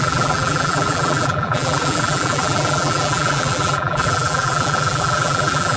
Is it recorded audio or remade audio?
remade